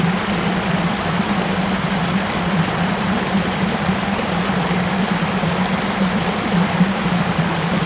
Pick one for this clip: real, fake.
real